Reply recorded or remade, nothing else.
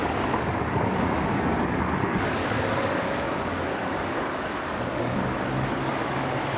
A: remade